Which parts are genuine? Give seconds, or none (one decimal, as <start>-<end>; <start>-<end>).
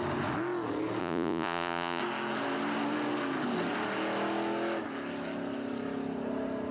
0.0-1.0; 2.0-6.7